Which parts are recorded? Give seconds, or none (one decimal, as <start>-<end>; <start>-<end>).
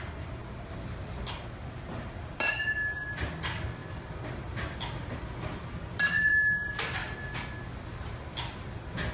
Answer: 0.0-9.1